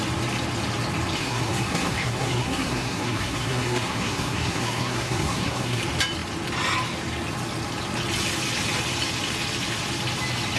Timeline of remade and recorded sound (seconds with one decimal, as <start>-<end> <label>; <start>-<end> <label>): 0.0-1.2 recorded; 1.2-5.8 remade; 5.8-10.6 recorded